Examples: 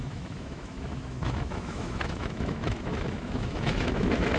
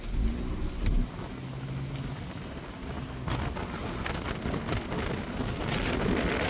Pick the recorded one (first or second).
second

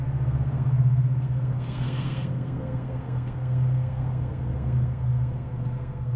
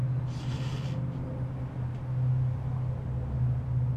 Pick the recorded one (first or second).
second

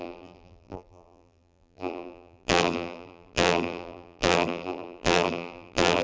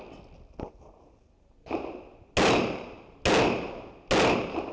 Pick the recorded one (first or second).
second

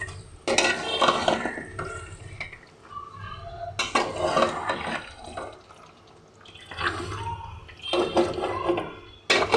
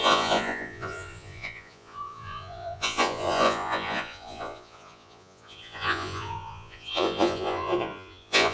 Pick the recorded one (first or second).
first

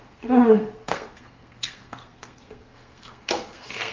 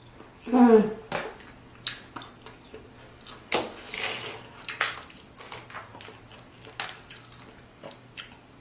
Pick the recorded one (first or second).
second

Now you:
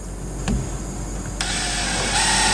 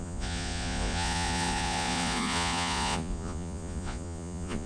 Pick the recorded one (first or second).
first